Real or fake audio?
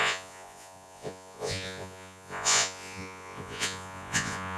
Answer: fake